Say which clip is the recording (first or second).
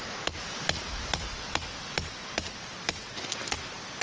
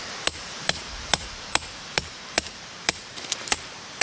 first